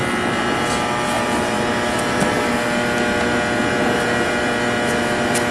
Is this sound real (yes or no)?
yes